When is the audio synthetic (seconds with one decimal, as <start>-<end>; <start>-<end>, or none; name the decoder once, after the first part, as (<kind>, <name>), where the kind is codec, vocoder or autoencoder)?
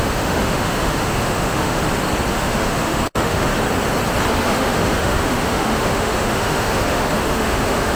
0.0-1.8 (autoencoder, DAC-VAE); 2.3-3.5; 4.3-8.0